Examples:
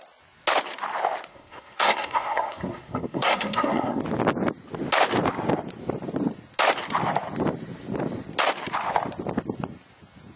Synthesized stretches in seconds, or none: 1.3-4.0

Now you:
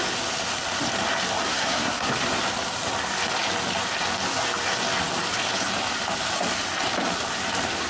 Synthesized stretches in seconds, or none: 1.5-2.1

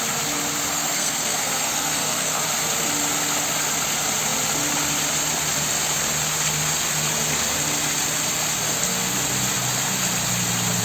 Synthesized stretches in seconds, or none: 0.7-2.4

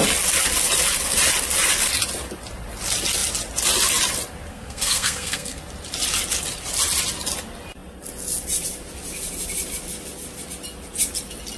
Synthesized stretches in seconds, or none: 4.5-5.6

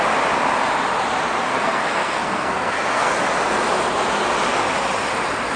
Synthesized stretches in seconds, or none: 1.5-3.1

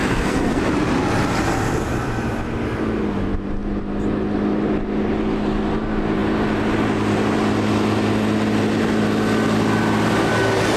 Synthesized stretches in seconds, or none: 0.0-0.6

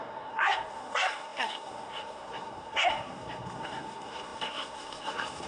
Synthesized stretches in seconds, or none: 0.0-5.5